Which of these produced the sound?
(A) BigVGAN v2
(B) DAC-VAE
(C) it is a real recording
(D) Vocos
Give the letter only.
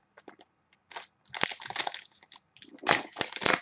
C